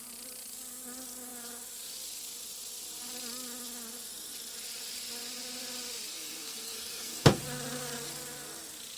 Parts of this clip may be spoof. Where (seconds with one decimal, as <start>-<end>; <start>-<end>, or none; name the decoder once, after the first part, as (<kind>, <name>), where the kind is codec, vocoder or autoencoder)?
6.1-7.4 (codec, SNAC)